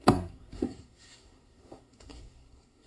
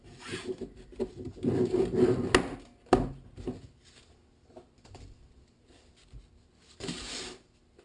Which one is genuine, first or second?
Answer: second